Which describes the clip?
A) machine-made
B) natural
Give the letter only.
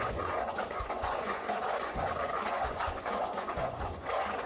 A